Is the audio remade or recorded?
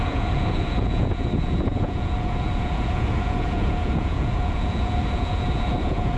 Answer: remade